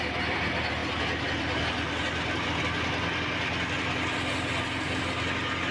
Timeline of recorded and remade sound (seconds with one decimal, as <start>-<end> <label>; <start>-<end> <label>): 0.0-5.7 recorded